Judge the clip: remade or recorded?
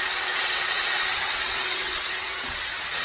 remade